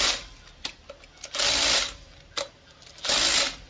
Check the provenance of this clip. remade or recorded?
recorded